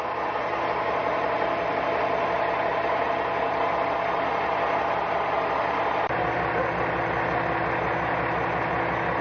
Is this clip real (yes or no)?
yes